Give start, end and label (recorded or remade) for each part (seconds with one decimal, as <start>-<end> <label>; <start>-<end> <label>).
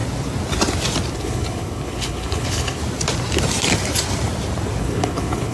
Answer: 0.0-1.1 recorded; 1.1-2.8 remade; 2.8-4.8 recorded; 4.8-5.5 remade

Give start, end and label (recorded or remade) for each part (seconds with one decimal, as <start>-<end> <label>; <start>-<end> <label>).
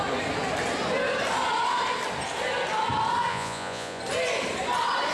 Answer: 0.0-3.3 recorded; 3.3-4.0 remade; 4.0-5.1 recorded